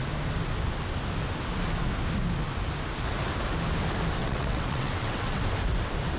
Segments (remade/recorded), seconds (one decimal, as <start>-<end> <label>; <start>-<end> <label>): 0.0-4.2 recorded; 4.2-5.4 remade; 5.4-6.2 recorded